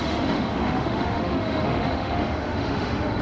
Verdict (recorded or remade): remade